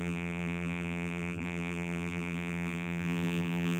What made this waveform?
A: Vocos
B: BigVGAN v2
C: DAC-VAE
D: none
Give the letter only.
B